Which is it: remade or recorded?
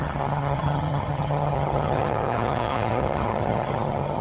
remade